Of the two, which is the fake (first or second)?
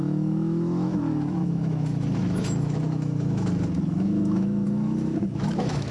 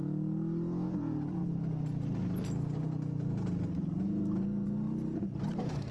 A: first